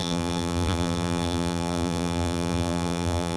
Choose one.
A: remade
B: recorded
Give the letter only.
A